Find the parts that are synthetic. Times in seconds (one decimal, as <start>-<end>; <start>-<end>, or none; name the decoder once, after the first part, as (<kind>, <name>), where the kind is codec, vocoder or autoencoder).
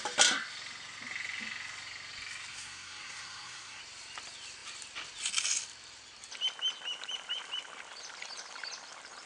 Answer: 2.5-3.8 (codec, SNAC)